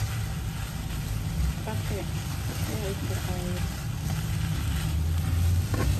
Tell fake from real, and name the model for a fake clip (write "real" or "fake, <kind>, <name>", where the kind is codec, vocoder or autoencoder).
real